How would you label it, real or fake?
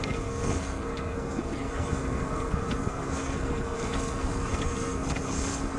fake